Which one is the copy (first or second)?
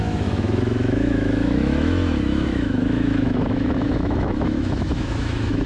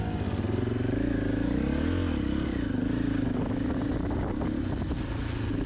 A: first